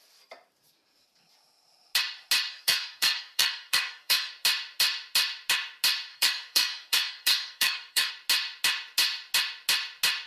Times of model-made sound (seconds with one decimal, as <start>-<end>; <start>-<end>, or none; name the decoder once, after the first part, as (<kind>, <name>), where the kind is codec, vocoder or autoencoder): 2.5-4.3 (codec, SNAC); 6.1-8.1